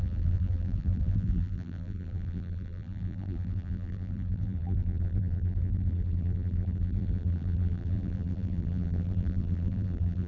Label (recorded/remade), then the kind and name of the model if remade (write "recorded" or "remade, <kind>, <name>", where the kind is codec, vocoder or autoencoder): remade, vocoder, BigVGAN v2